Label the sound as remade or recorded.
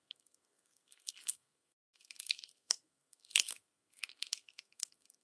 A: remade